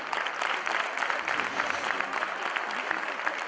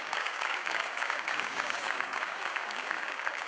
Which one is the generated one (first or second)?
second